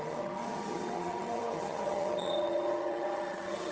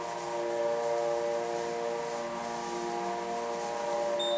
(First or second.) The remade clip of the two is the first